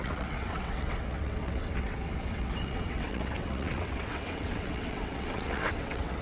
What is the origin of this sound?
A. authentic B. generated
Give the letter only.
B